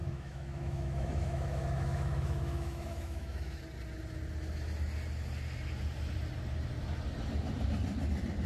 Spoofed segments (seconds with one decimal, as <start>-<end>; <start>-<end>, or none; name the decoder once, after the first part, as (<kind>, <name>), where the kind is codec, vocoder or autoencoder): 0.0-3.6 (autoencoder, DAC-VAE)